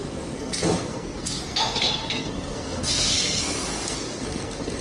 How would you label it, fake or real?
fake